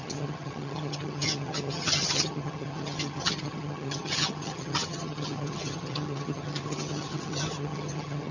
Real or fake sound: fake